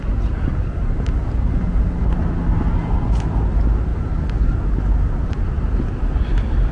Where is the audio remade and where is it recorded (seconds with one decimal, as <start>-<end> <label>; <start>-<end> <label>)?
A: 0.0-6.7 recorded